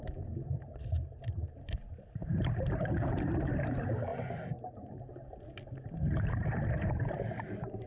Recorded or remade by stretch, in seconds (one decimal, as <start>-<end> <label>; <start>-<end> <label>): 0.0-4.1 remade; 4.1-7.5 recorded; 7.5-7.9 remade